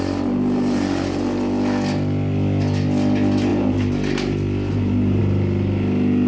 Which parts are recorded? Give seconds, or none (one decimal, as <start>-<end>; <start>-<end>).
0.0-6.3